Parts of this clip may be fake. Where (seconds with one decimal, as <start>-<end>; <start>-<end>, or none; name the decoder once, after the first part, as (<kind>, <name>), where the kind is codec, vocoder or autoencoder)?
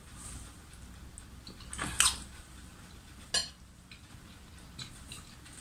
none